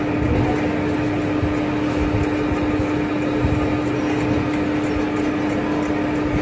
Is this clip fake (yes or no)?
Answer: no